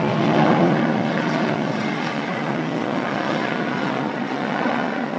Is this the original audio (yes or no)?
no